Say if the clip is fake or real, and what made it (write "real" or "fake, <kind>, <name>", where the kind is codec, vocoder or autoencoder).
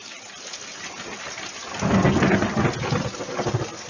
real